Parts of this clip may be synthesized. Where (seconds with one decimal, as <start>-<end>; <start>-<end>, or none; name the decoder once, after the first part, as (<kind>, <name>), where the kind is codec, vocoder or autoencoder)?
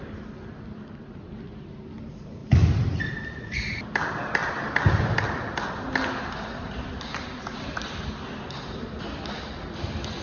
none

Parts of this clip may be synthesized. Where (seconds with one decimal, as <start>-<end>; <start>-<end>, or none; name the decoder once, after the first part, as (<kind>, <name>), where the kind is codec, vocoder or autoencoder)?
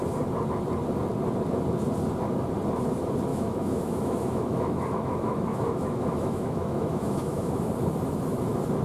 3.3-7.7 (autoencoder, DAC-VAE)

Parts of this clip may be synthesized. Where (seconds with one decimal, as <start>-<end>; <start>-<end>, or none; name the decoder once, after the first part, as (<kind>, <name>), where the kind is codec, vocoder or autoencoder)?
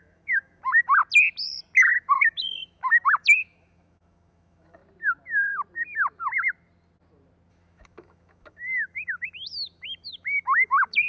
0.0-1.0 (autoencoder, DAC-VAE); 1.9-4.8; 7.5-11.1